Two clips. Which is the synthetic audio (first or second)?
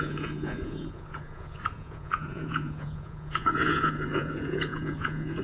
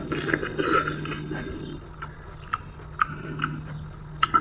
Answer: first